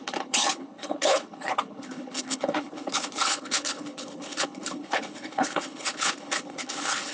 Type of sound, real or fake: fake